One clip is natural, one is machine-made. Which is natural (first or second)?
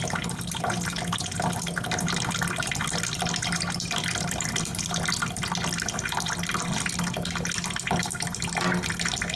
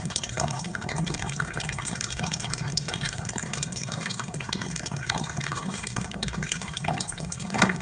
first